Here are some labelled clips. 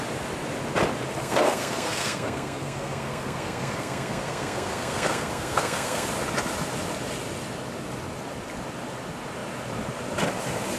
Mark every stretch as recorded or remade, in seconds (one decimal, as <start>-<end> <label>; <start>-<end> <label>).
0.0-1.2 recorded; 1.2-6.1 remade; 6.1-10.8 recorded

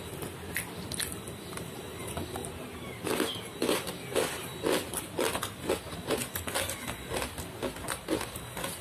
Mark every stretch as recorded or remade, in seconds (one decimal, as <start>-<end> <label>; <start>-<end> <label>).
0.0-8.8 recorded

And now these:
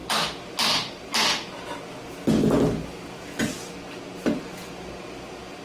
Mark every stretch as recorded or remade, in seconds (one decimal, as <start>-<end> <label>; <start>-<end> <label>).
0.0-5.6 recorded

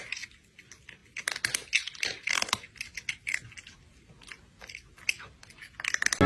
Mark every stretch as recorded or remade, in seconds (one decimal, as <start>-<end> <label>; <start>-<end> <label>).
0.0-6.3 recorded

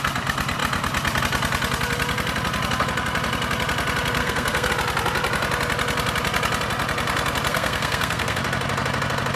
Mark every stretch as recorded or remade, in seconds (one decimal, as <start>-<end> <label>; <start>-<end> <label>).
0.0-4.2 recorded; 4.2-4.7 remade; 4.7-7.5 recorded; 7.5-8.4 remade; 8.4-9.4 recorded